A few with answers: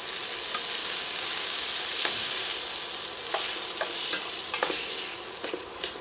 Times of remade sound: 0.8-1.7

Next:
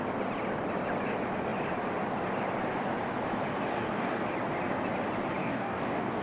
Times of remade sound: 3.7-4.2; 5.4-6.2

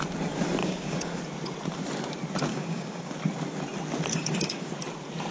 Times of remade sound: 0.6-1.2; 2.5-3.1; 4.1-4.7

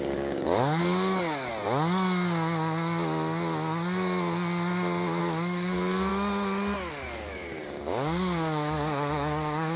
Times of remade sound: 0.0-1.5; 5.2-6.1; 6.9-9.8

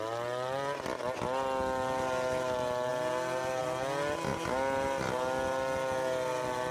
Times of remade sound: none